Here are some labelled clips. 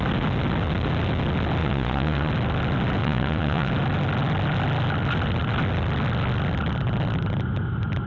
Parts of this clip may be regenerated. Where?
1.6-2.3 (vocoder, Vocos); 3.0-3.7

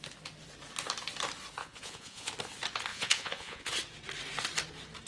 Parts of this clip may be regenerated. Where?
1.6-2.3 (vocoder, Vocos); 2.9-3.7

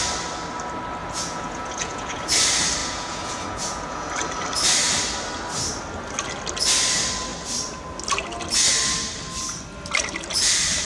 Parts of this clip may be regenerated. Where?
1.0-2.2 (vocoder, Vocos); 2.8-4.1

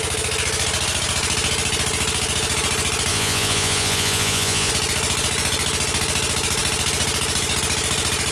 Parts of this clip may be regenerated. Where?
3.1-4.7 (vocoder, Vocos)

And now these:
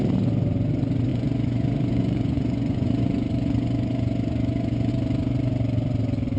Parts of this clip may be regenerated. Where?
1.1-4.9 (vocoder, Vocos)